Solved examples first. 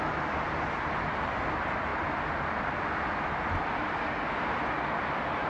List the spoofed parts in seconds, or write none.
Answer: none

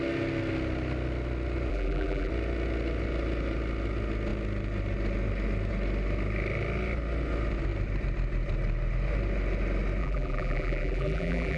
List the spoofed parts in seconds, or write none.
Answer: 1.7-2.3 (vocoder, BigVGAN v2); 10.0-11.6

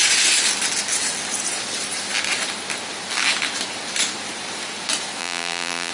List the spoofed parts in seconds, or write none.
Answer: 5.2-5.9 (vocoder, BigVGAN v2)

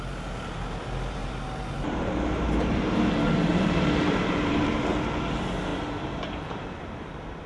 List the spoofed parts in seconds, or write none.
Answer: 1.2-3.1 (vocoder, BigVGAN v2); 3.5-4.7; 5.7-7.1